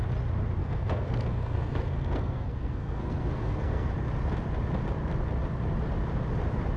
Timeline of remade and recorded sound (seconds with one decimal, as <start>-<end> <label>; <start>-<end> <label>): 0.0-0.6 recorded; 0.6-3.9 remade; 3.9-6.8 recorded